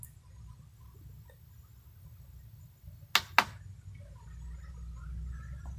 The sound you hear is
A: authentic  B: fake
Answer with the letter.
A